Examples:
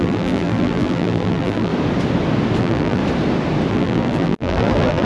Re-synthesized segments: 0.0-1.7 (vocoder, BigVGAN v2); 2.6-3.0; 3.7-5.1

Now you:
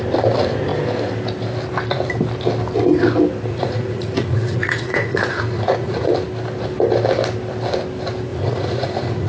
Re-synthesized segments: 3.5-6.1 (vocoder, Vocos); 8.3-9.3

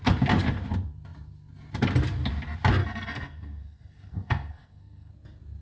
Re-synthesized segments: 2.8-5.1 (codec, SNAC)

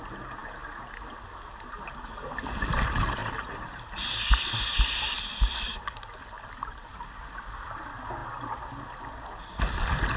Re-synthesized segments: 3.2-6.9 (vocoder, BigVGAN v2)

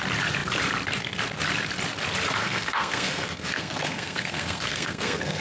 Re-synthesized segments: 2.4-5.4 (codec, SNAC)

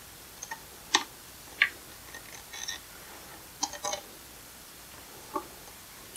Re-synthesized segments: 0.0-1.8 (vocoder, BigVGAN v2); 2.8-3.3; 4.3-6.2